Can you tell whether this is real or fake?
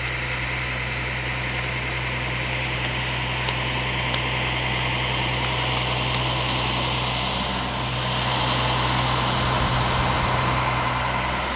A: real